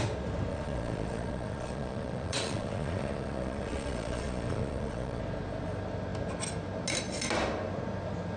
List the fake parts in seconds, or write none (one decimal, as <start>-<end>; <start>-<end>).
0.5-5.2